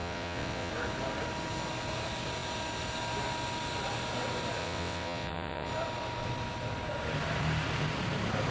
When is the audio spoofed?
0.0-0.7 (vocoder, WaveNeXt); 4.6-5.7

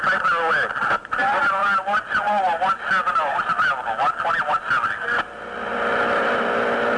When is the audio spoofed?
none

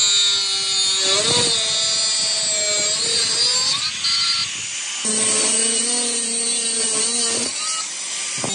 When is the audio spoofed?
none

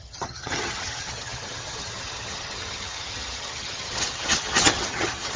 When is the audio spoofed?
0.0-5.4 (vocoder, HiFi-GAN)